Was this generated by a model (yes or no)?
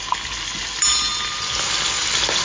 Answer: no